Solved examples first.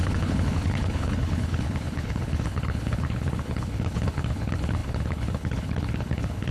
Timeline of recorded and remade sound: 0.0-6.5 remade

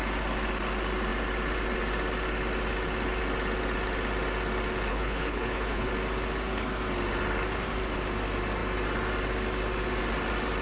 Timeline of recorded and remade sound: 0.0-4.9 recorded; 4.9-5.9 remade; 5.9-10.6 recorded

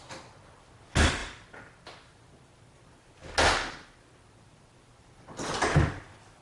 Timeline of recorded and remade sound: 0.0-6.4 recorded

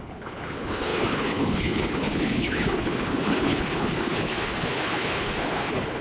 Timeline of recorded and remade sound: 0.0-6.0 remade